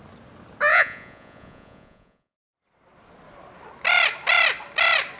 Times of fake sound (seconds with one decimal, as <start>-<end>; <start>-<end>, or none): 0.7-2.5